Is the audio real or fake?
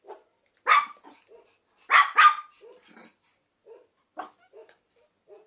real